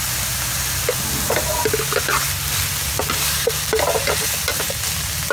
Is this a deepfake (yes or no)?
no